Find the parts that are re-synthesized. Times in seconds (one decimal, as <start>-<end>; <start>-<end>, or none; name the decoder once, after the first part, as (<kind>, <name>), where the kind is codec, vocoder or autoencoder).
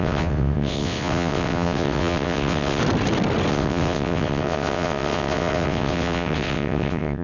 0.0-2.8 (vocoder, WaveNeXt); 3.5-7.2